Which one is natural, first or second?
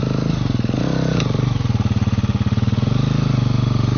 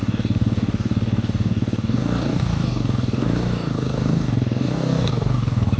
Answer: first